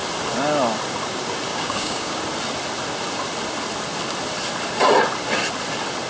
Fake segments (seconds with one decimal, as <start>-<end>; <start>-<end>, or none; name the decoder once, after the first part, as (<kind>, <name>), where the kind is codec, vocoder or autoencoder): 1.5-2.2 (codec, DAC)